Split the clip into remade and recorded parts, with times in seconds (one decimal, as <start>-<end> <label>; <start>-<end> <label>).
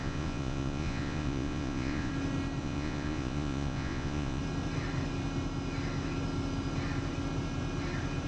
0.0-2.1 remade; 2.1-2.6 recorded; 2.6-4.4 remade; 4.4-8.3 recorded